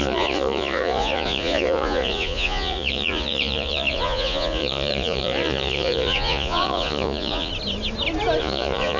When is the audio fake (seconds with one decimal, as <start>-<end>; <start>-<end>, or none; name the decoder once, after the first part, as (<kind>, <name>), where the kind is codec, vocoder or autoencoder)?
0.0-7.5 (vocoder, Vocos); 8.4-9.0